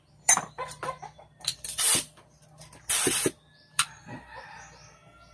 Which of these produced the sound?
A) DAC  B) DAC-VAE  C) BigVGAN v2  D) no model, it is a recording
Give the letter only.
C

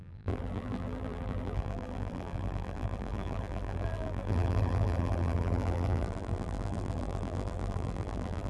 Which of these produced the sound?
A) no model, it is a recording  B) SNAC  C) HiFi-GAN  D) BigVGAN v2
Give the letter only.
D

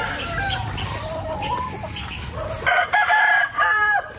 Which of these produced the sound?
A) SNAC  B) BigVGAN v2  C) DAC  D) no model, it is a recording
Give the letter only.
B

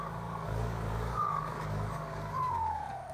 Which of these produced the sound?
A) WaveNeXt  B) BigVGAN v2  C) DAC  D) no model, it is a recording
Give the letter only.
C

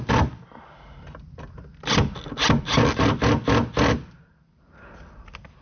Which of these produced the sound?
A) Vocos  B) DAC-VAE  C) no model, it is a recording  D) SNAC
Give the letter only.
C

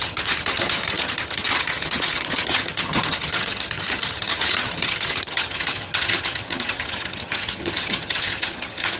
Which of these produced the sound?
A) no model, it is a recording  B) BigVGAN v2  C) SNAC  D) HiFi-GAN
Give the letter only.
D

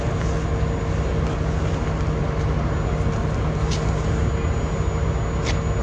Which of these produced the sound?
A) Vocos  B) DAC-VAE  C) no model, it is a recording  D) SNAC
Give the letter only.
C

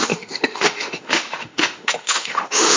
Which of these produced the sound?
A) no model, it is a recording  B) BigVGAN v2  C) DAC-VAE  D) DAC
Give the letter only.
C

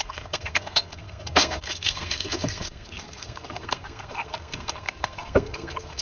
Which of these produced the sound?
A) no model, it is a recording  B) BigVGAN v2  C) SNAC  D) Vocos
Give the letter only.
C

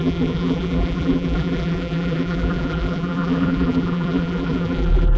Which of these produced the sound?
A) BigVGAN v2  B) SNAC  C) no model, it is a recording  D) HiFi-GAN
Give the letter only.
A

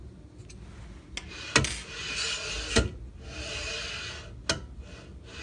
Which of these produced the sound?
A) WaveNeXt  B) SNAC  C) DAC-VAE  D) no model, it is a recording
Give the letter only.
D